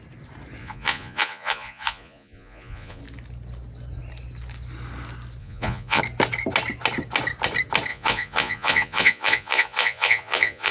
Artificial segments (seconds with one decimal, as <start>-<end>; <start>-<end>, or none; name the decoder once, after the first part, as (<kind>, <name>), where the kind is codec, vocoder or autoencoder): 0.6-3.0 (vocoder, Vocos); 5.4-6.0; 7.9-10.7

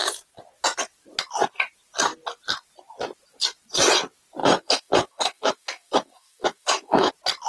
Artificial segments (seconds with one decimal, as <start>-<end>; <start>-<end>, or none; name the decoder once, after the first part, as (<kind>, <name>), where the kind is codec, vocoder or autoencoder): 4.4-7.1 (autoencoder, DAC-VAE)

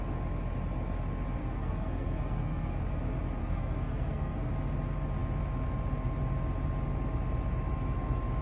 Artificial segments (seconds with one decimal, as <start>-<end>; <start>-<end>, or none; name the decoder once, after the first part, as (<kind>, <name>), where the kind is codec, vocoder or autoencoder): 1.4-2.8 (codec, SNAC); 3.4-4.5

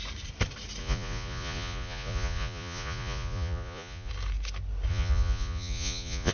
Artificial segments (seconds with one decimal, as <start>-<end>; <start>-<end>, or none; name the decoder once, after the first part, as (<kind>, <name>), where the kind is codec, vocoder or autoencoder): 0.8-4.1 (vocoder, Vocos); 4.9-6.3

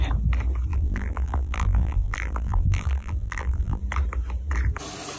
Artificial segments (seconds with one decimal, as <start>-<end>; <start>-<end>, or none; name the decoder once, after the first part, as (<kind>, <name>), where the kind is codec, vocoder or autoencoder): 0.7-3.8 (vocoder, BigVGAN v2)

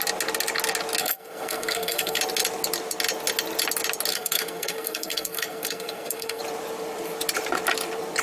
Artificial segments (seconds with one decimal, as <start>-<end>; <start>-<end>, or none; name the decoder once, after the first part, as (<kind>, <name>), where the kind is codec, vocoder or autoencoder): 1.0-2.2 (codec, SNAC); 4.1-6.4

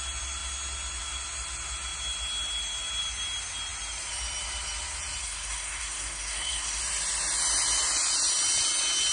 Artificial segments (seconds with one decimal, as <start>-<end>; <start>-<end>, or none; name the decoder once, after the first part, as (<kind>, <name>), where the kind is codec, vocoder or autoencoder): 5.2-6.8 (codec, SNAC)

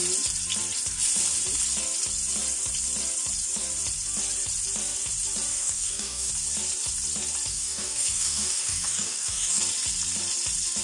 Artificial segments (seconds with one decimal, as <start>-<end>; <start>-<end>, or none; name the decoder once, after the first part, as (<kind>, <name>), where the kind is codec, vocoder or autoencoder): 5.5-6.3 (codec, DAC); 7.5-9.6